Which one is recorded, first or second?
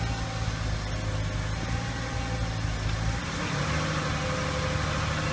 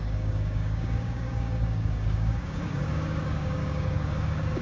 first